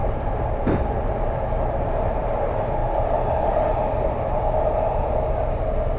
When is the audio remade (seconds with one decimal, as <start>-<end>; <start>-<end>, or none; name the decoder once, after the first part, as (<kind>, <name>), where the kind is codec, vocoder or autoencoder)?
0.0-0.9 (vocoder, BigVGAN v2)